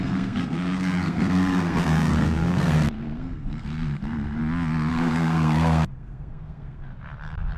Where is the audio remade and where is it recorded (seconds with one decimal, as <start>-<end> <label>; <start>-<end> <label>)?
0.0-4.4 remade; 4.4-4.9 recorded; 4.9-6.9 remade; 6.9-7.6 recorded

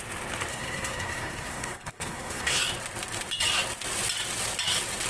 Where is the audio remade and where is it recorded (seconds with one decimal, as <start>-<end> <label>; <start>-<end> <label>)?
0.0-0.5 recorded; 0.5-2.6 remade; 2.6-5.1 recorded